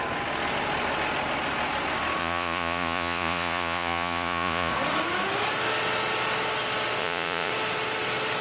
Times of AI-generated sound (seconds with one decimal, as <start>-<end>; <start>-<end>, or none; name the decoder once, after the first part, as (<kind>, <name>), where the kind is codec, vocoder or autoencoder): 2.2-4.7 (vocoder, Vocos); 7.0-7.5